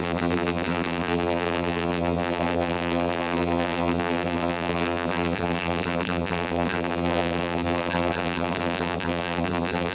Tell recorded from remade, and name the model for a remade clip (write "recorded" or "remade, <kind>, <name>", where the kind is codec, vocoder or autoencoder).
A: remade, vocoder, BigVGAN v2